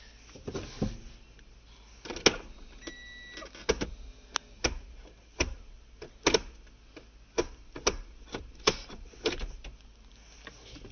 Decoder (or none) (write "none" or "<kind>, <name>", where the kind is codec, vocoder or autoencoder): none